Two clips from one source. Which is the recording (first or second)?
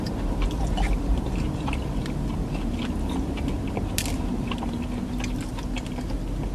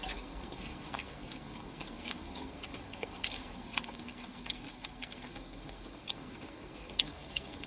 first